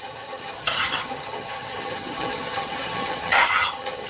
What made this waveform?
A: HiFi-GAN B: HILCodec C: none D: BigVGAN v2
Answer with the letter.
A